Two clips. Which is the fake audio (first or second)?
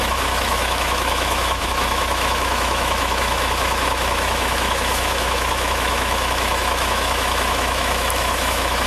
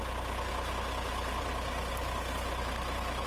first